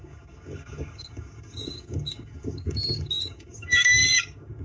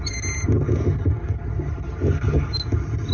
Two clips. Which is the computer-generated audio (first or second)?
first